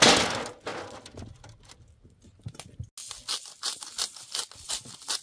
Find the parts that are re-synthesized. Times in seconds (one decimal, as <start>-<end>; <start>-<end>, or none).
none